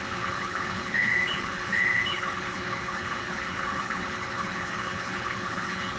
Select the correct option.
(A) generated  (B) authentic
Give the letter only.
A